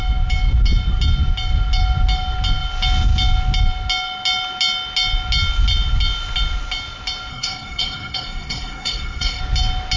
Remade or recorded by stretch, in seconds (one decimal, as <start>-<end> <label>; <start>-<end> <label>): 0.0-7.3 recorded; 7.3-9.4 remade; 9.4-10.0 recorded